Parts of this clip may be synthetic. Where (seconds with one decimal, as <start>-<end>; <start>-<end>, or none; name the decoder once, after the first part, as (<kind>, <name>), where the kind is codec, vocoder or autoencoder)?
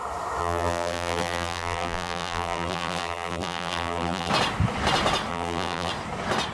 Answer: 0.4-4.3 (vocoder, BigVGAN v2); 5.3-5.9